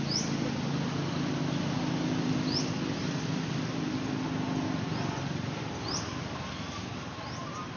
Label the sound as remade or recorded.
recorded